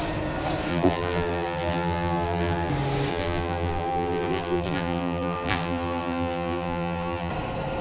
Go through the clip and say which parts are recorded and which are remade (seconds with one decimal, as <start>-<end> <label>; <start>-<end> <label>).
0.0-0.7 recorded; 0.7-2.7 remade; 2.7-3.1 recorded; 3.1-7.3 remade; 7.3-7.8 recorded